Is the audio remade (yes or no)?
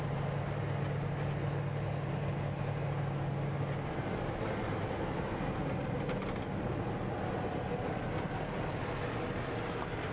no